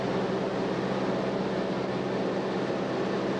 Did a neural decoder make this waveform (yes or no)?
no